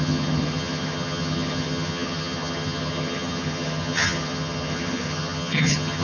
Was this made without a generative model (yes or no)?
no